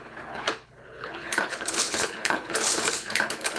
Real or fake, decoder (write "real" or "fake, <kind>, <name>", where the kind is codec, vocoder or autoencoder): fake, codec, HILCodec